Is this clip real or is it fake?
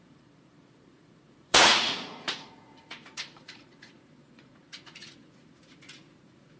fake